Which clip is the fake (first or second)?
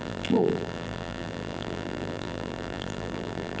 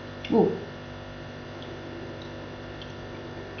first